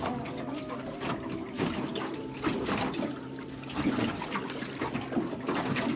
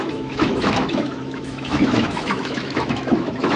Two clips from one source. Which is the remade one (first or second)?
second